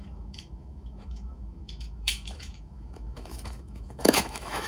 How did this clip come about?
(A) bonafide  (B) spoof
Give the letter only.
B